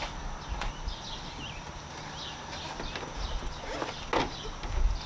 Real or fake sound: real